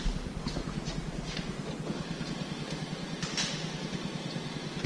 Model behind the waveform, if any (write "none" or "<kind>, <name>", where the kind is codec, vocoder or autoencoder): none